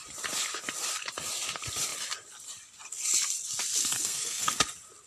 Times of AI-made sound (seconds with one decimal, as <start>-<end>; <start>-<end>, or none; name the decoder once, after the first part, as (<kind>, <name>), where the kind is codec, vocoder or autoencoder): 3.8-4.5 (codec, SNAC)